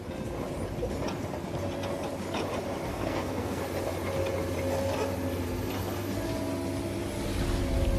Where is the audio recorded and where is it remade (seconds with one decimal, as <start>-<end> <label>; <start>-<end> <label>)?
0.0-2.9 recorded; 2.9-3.6 remade; 3.6-8.0 recorded